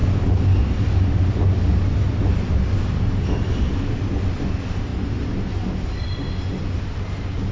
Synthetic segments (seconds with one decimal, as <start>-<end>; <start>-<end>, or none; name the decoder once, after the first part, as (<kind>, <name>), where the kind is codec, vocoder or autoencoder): none